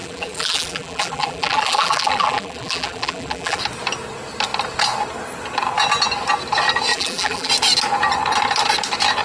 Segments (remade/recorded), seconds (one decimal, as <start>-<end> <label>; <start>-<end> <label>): 0.0-3.6 remade; 3.6-6.9 recorded; 6.9-7.5 remade; 7.5-9.2 recorded

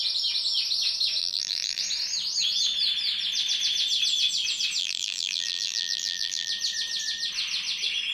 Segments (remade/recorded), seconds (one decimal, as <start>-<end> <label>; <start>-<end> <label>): 0.0-1.2 recorded; 1.2-1.8 remade; 1.8-4.8 recorded; 4.8-6.5 remade; 6.5-8.1 recorded

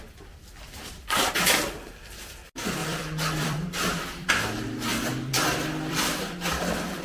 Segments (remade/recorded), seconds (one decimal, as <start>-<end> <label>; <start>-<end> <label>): 0.0-2.8 recorded; 2.8-4.3 remade; 4.3-4.9 recorded; 4.9-7.0 remade

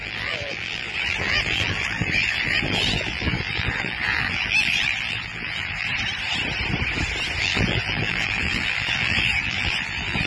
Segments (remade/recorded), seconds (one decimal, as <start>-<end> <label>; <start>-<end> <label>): 0.0-5.9 remade; 5.9-7.4 recorded; 7.4-10.3 remade